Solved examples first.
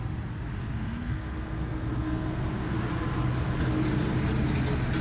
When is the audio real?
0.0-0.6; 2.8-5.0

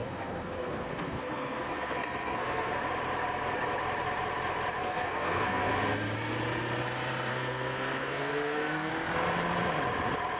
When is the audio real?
2.7-4.8; 5.7-7.3; 8.9-10.4

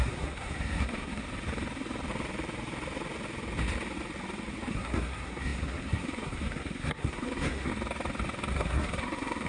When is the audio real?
1.2-4.7; 7.7-8.5

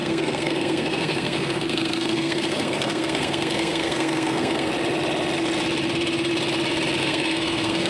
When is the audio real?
4.7-7.0

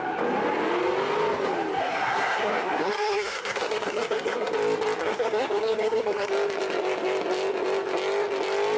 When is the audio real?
0.0-1.8; 4.5-5.0; 6.3-8.8

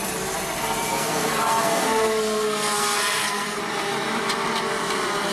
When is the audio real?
0.0-0.9; 3.6-5.3

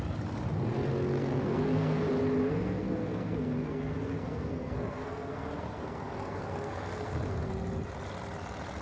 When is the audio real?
0.0-0.9; 2.0-2.4; 7.5-8.8